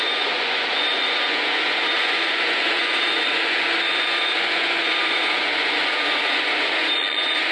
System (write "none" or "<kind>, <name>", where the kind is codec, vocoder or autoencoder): vocoder, Vocos